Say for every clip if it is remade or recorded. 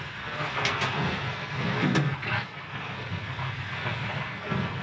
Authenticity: remade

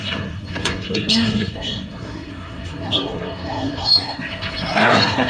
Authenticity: remade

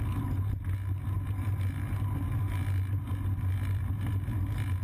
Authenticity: recorded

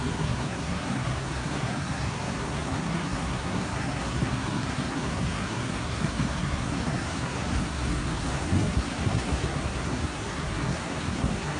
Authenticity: remade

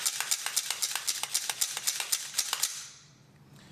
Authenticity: recorded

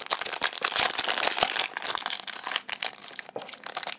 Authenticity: recorded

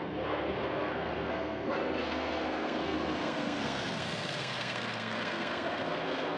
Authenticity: remade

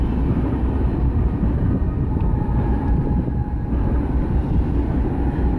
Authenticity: recorded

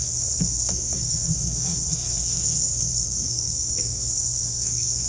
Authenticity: remade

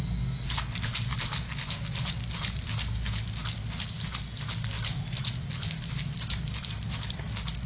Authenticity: recorded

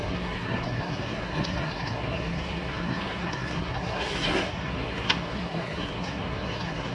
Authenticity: remade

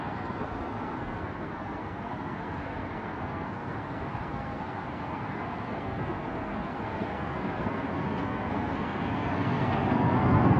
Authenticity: remade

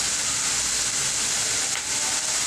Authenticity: recorded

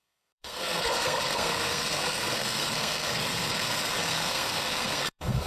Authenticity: remade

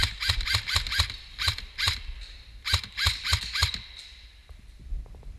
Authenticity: recorded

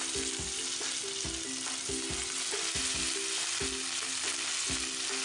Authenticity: recorded